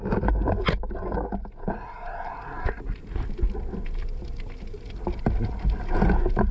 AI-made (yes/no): no